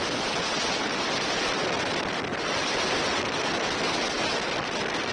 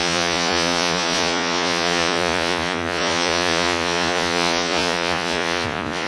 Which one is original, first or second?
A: first